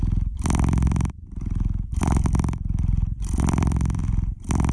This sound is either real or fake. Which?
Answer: fake